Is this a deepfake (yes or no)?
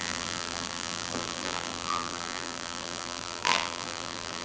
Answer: yes